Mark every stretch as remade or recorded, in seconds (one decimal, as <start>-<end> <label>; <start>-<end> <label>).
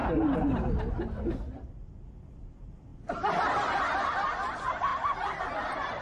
0.0-6.0 recorded